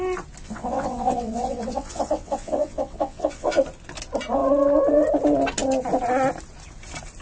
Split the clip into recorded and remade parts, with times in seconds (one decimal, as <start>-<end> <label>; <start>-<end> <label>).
0.0-0.4 recorded; 0.4-3.6 remade; 3.6-7.2 recorded